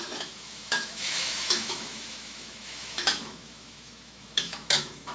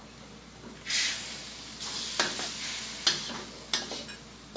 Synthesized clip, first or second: first